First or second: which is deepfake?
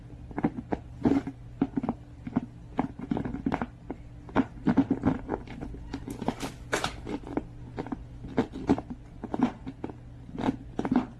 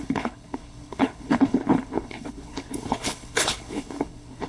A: second